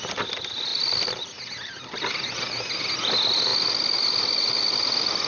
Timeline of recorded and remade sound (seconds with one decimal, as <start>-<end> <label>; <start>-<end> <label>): 0.0-5.3 recorded